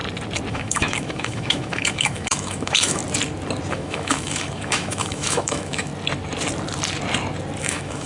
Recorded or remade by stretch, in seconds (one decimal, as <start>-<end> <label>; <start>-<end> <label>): 0.0-0.5 recorded; 0.5-3.0 remade; 3.0-3.7 recorded; 3.7-5.9 remade; 5.9-7.6 recorded; 7.6-8.1 remade